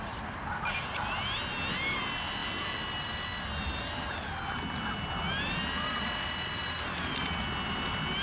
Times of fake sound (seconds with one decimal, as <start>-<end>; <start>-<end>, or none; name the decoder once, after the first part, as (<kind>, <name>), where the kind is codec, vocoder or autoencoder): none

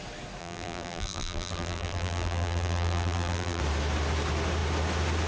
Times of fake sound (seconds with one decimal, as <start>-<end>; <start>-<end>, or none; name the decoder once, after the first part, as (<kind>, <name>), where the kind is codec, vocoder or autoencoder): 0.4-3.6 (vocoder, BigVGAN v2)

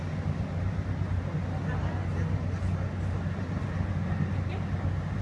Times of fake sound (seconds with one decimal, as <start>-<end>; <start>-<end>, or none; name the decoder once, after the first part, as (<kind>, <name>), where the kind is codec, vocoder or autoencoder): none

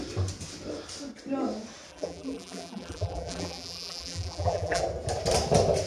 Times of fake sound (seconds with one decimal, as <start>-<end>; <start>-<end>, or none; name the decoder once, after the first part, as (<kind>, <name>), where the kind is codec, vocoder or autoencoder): 1.9-4.8 (vocoder, BigVGAN v2)

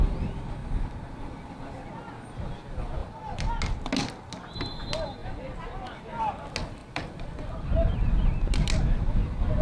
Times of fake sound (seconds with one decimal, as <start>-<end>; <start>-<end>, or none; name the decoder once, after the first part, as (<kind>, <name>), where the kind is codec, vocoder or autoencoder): 0.6-1.3 (vocoder, BigVGAN v2); 3.0-3.5; 5.2-6.3; 6.8-8.0

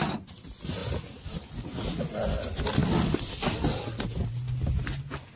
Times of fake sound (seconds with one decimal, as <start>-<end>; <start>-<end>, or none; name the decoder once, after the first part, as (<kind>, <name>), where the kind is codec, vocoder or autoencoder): none

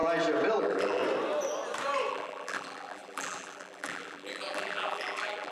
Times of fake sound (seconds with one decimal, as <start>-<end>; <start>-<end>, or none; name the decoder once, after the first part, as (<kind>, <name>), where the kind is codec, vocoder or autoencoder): 0.6-1.0 (vocoder, BigVGAN v2); 2.1-5.5

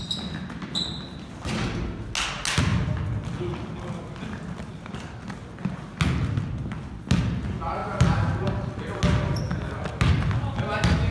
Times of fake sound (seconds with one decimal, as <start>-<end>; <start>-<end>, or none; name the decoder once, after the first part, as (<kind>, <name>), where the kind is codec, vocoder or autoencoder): 7.8-8.8 (vocoder, BigVGAN v2)